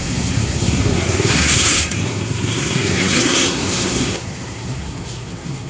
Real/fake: fake